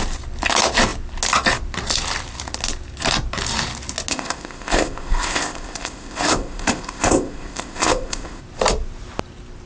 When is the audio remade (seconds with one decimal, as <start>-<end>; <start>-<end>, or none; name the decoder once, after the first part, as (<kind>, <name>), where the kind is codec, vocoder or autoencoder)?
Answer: 4.1-8.4 (codec, ZipCodec)